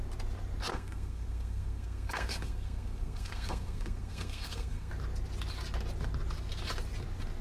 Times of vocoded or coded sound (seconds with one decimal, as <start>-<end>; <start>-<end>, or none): 0.7-4.9